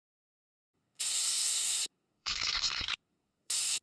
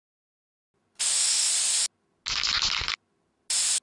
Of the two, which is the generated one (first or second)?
first